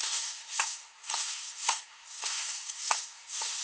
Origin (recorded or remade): remade